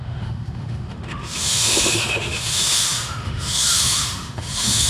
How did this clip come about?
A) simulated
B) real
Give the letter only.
A